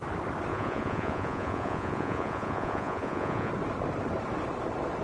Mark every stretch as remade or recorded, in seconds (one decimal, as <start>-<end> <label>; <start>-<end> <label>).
0.0-0.5 recorded; 0.5-3.5 remade; 3.5-5.0 recorded